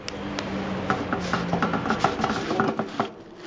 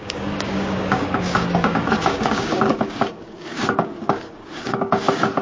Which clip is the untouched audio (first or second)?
first